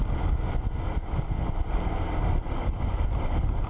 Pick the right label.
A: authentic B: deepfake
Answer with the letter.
A